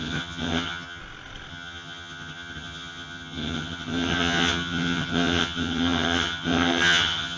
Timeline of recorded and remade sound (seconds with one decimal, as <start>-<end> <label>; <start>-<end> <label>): 0.0-1.0 remade; 1.0-1.5 recorded; 1.5-7.4 remade